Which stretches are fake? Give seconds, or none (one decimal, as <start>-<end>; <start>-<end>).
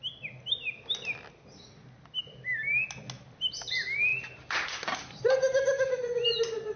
none